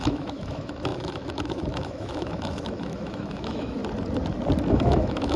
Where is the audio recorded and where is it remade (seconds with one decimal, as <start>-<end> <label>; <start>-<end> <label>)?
0.0-3.8 remade; 3.8-4.7 recorded; 4.7-5.4 remade